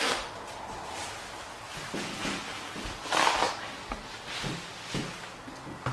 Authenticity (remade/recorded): recorded